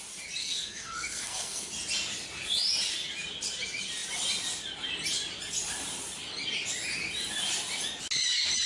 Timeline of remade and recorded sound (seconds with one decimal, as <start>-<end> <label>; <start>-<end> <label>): 0.0-0.4 recorded; 0.4-1.7 remade; 1.7-8.7 recorded